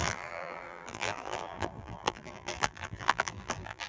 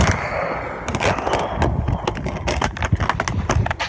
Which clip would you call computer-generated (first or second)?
first